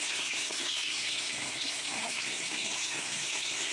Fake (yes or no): yes